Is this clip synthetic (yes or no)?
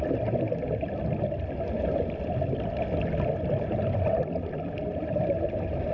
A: no